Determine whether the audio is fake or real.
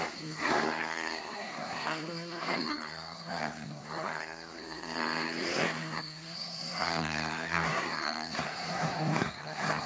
fake